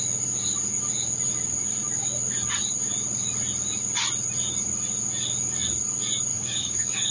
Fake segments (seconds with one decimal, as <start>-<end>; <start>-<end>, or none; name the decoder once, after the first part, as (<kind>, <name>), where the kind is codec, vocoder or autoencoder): 6.3-7.1 (codec, DAC)